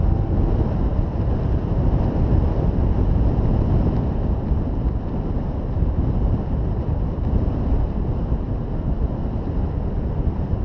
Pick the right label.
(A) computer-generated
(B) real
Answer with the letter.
B